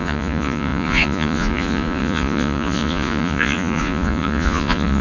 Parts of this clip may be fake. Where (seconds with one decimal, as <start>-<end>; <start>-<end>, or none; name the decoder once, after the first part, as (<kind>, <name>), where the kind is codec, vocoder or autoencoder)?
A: 0.0-5.0 (vocoder, Vocos)